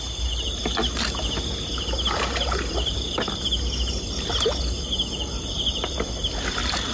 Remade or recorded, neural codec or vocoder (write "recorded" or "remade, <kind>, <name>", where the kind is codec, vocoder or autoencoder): recorded